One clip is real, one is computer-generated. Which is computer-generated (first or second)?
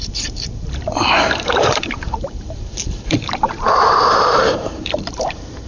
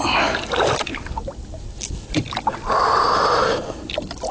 first